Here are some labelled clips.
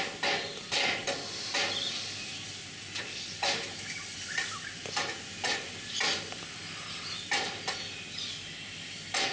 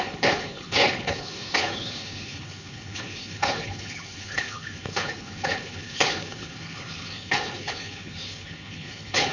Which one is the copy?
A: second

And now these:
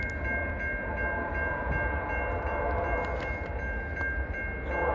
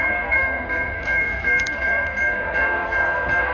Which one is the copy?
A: second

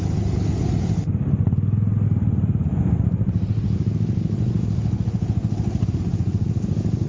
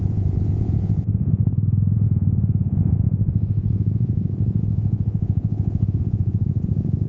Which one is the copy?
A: second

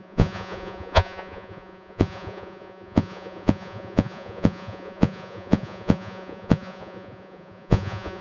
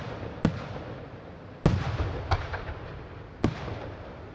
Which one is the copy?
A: first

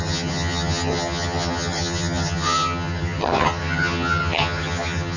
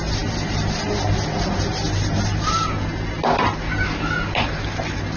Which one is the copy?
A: first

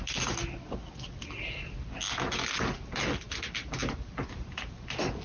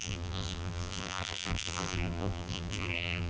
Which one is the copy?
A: second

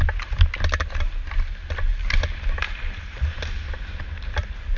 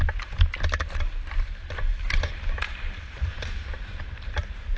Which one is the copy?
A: second